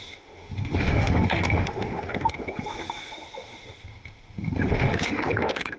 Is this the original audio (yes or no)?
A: no